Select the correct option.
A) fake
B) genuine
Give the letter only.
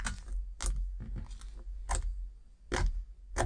B